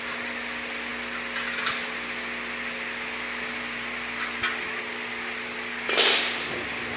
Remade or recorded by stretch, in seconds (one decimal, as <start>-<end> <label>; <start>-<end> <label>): 0.0-7.0 recorded